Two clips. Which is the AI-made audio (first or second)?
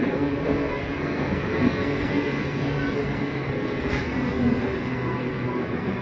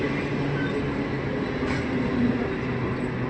first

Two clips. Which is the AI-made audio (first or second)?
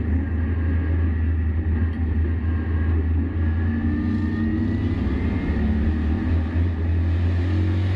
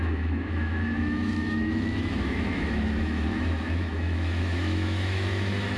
second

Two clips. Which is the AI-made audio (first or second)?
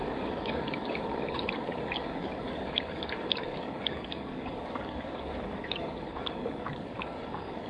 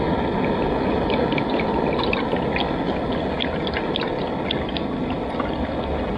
first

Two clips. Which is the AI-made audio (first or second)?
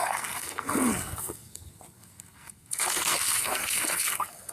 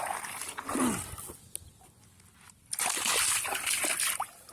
first